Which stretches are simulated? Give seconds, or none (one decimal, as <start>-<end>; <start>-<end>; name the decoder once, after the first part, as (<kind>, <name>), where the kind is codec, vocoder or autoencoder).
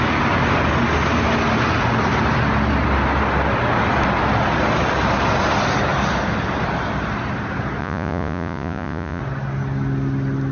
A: 7.8-9.2 (vocoder, Vocos)